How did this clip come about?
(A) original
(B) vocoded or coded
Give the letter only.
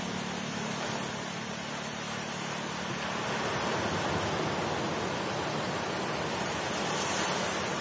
A